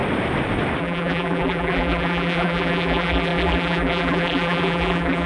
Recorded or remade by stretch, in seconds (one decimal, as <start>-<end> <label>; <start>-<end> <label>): 0.0-0.8 recorded; 0.8-5.3 remade